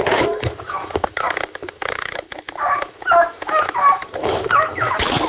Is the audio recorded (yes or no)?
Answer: no